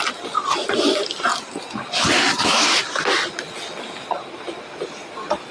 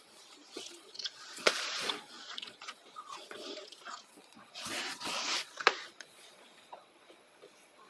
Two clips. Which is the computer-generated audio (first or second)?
second